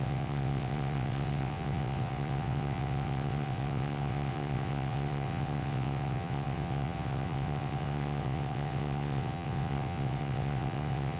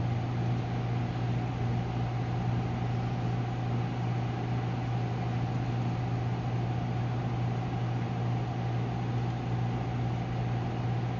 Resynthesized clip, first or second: first